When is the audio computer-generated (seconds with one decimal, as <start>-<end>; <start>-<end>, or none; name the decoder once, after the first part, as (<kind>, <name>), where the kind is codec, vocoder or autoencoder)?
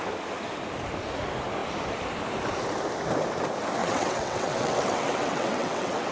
3.8-6.1 (vocoder, WaveNeXt)